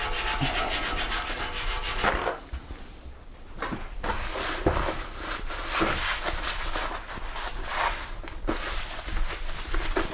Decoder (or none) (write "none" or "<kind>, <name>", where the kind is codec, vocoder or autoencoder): none